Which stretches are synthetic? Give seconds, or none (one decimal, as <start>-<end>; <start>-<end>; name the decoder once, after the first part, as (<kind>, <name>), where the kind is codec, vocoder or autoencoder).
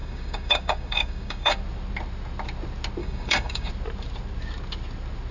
0.0-1.6 (codec, DAC); 3.0-3.7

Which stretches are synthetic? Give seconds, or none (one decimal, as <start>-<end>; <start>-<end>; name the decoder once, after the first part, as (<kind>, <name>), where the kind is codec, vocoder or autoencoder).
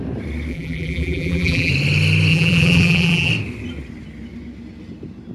0.5-1.7 (vocoder, BigVGAN v2); 2.3-3.3